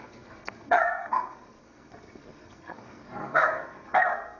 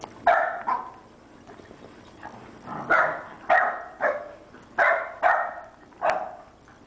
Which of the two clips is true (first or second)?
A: second